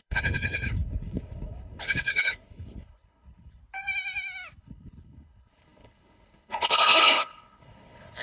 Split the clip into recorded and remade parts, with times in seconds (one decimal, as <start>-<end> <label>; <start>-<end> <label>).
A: 0.0-3.6 remade; 3.6-4.6 recorded; 4.6-8.2 remade